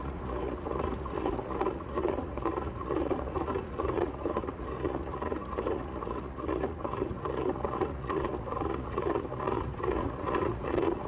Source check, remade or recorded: remade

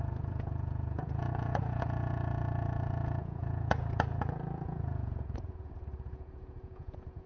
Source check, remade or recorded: remade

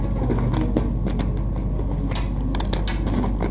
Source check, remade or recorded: recorded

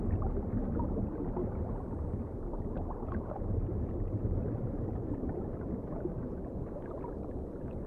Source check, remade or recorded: recorded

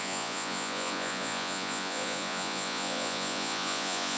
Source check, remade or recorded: remade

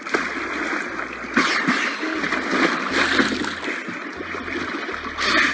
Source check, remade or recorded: recorded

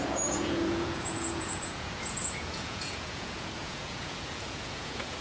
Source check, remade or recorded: remade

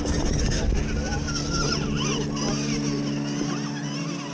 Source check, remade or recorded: recorded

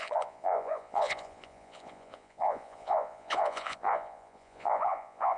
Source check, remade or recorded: remade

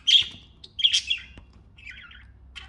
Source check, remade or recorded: recorded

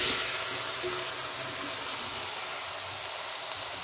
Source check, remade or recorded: recorded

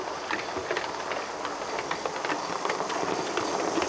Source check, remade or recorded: recorded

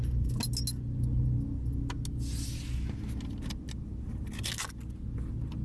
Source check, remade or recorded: recorded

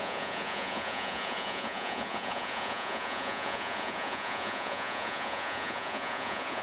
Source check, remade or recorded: remade